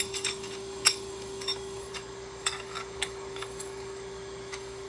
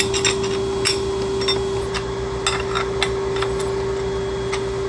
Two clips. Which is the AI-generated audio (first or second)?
first